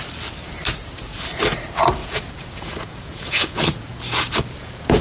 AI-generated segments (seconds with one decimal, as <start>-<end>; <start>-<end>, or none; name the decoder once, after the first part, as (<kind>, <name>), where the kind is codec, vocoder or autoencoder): 2.0-5.0 (vocoder, Vocos)